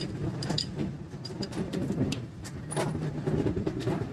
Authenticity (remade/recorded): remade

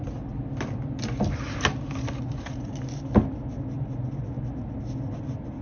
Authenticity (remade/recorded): recorded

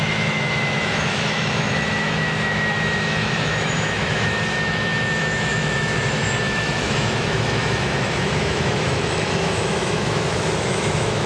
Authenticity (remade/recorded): remade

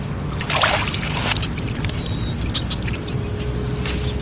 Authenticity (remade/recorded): recorded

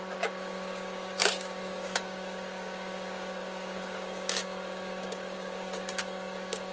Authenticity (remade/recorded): remade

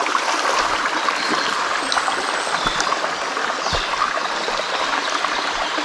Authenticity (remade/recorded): recorded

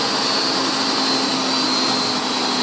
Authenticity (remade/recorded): recorded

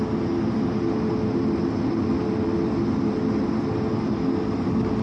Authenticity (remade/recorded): recorded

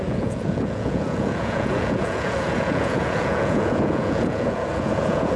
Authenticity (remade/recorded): remade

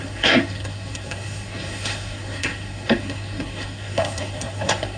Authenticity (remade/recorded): remade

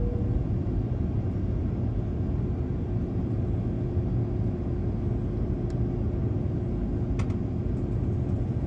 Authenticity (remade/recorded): recorded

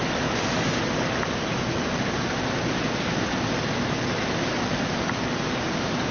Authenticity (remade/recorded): recorded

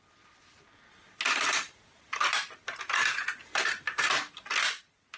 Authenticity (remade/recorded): recorded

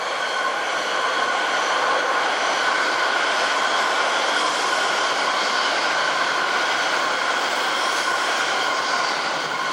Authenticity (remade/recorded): recorded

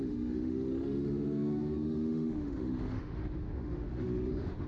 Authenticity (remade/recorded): remade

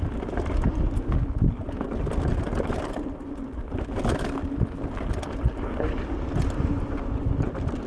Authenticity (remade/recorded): recorded